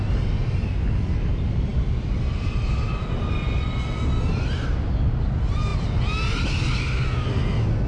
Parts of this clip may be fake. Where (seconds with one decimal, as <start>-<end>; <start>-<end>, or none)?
none